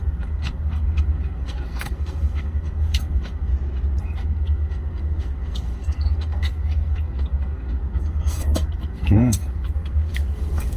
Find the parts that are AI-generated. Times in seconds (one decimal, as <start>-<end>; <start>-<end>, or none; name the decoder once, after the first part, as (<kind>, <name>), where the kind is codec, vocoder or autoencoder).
0.0-3.5 (codec, SNAC); 4.0-10.8

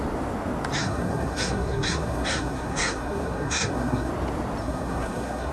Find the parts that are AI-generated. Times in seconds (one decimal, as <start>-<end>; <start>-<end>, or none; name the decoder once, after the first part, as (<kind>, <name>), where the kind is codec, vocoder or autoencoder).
0.8-4.1 (codec, SNAC); 4.6-5.5